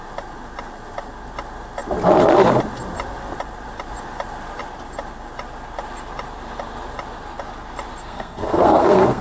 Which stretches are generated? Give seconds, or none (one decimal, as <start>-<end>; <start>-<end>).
8.0-9.2